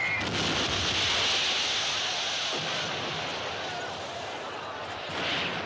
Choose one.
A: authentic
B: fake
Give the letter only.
A